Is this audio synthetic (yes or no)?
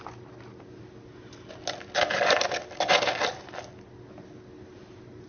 no